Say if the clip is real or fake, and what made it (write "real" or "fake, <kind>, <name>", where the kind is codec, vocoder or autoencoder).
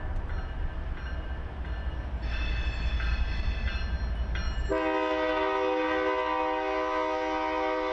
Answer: real